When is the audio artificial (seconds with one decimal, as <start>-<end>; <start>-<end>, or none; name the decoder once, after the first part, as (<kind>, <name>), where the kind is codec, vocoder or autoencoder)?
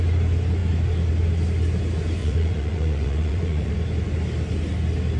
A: 2.2-3.7 (vocoder, Vocos)